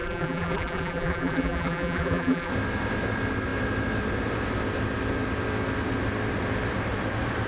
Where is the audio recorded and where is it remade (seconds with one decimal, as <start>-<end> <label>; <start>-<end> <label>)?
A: 0.0-2.5 remade; 2.5-7.5 recorded